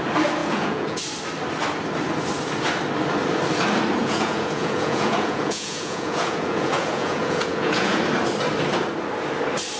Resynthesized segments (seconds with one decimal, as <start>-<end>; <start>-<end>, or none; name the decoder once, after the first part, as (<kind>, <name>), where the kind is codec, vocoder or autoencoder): 0.4-1.0 (vocoder, Vocos); 4.0-8.0